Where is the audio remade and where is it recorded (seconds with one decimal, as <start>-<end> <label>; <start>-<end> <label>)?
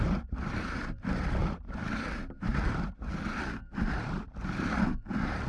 0.0-5.5 recorded